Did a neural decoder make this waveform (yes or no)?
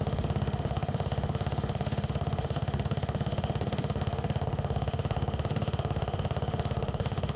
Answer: yes